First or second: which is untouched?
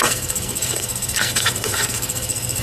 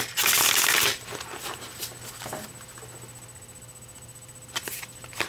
second